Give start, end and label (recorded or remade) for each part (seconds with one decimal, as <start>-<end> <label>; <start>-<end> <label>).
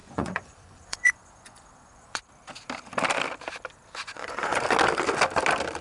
0.0-2.2 remade; 2.2-4.0 recorded; 4.0-4.6 remade; 4.6-5.8 recorded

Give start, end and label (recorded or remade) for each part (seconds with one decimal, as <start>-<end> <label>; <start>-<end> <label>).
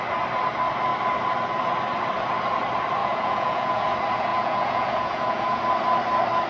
0.0-3.0 recorded; 3.0-3.8 remade; 3.8-4.3 recorded; 4.3-5.6 remade; 5.6-6.5 recorded